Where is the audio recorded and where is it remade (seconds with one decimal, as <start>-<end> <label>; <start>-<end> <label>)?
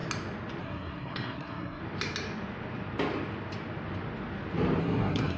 0.0-0.6 recorded; 0.6-1.8 remade; 1.8-4.8 recorded; 4.8-5.4 remade